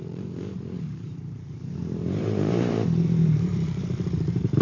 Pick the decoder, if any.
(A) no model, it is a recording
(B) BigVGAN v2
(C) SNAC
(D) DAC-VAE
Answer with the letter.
B